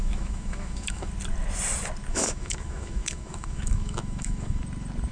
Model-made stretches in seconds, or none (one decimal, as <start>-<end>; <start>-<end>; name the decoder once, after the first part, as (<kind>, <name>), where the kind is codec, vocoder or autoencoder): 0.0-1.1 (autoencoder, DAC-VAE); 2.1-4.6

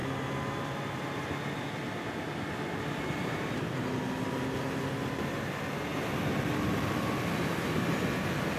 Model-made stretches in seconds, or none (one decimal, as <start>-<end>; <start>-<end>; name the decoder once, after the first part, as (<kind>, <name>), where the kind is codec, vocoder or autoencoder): none

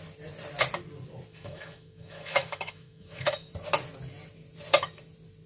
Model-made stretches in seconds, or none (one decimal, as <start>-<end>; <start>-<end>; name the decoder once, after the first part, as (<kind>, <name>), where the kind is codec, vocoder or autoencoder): 1.3-3.5 (autoencoder, DAC-VAE)